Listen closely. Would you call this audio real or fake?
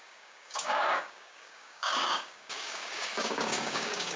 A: fake